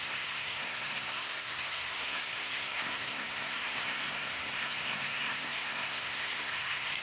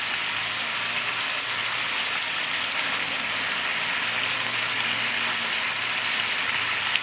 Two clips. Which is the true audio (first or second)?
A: second